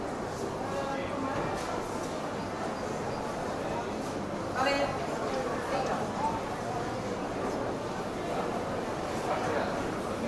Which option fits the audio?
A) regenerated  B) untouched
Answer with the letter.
B